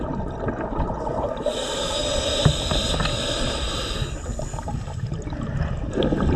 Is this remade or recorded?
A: recorded